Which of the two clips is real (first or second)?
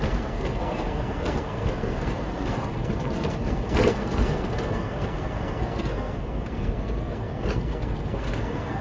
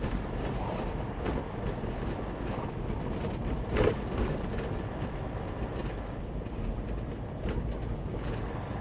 second